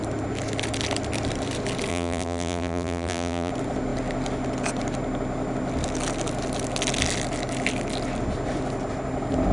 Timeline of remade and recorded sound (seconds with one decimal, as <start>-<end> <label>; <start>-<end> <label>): 0.0-1.9 recorded; 1.9-3.5 remade; 3.5-9.5 recorded